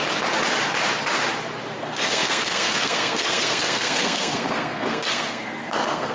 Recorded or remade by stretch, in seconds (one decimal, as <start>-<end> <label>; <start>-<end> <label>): 0.0-1.8 recorded; 1.8-6.1 remade